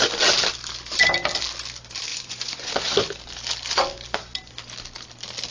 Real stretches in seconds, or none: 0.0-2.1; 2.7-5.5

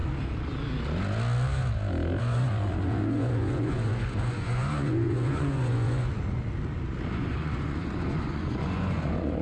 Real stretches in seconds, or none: 0.0-2.2; 6.1-7.1

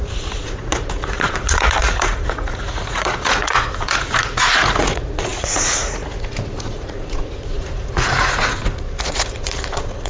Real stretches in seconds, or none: none